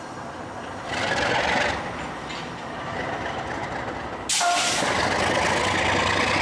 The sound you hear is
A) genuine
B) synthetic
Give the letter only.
A